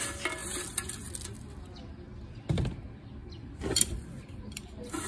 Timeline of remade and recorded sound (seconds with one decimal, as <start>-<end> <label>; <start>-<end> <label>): 0.0-0.4 recorded; 0.4-1.1 remade; 1.1-3.2 recorded; 3.2-5.1 remade